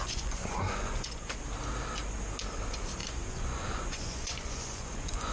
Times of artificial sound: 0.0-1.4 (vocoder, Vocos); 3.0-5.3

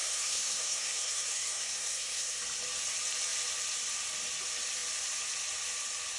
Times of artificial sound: 0.0-2.4 (codec, SNAC)